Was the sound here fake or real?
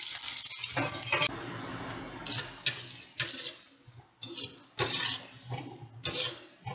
real